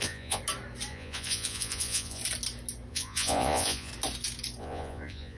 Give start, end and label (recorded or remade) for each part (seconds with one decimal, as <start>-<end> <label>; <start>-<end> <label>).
0.0-0.4 remade; 0.4-0.9 recorded; 0.9-2.2 remade; 2.2-2.9 recorded; 2.9-3.9 remade; 3.9-4.6 recorded; 4.6-5.4 remade